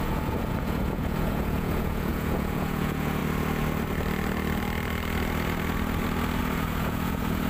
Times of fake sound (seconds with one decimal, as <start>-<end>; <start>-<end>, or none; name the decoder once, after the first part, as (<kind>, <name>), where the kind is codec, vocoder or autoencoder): 0.0-3.2 (vocoder, Vocos); 6.4-7.5